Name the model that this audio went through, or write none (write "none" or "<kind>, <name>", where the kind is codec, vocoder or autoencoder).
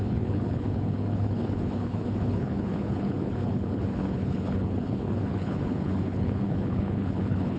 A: codec, HILCodec